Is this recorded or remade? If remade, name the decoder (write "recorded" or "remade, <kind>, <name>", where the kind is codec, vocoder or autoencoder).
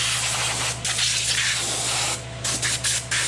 recorded